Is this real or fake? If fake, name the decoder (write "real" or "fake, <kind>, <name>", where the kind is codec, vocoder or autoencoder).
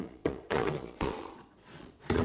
fake, vocoder, Vocos